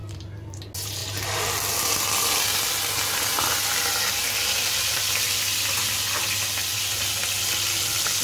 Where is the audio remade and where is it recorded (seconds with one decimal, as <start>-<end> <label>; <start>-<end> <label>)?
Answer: 0.0-0.6 remade; 0.6-8.2 recorded